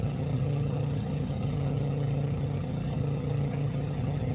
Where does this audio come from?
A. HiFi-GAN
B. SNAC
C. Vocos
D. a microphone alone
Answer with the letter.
A